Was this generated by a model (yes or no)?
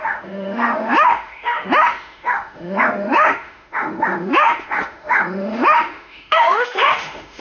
yes